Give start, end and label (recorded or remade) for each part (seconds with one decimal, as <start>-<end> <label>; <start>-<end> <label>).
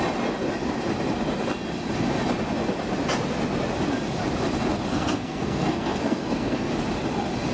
0.0-4.9 recorded; 4.9-6.7 remade; 6.7-7.5 recorded